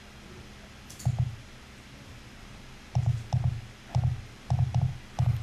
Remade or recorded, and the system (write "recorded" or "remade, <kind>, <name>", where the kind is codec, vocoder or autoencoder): recorded